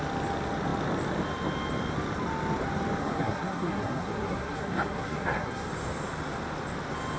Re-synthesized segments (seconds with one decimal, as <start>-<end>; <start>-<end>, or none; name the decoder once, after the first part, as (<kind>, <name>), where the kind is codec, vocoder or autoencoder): 3.0-5.7 (codec, SNAC)